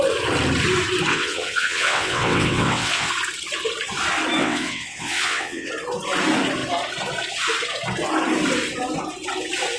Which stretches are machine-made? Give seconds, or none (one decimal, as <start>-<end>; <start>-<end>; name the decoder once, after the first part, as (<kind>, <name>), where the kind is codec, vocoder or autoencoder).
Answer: 1.1-3.1 (vocoder, WaveNeXt); 4.4-5.7